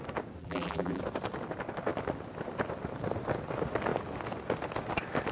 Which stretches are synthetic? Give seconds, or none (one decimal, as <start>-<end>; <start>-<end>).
0.4-1.0